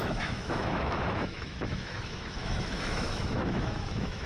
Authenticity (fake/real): fake